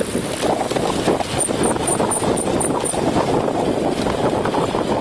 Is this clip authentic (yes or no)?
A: yes